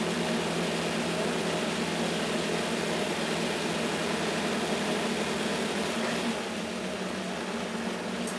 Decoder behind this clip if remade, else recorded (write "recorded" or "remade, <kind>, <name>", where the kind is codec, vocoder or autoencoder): recorded